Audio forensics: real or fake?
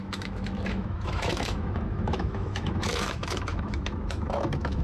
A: fake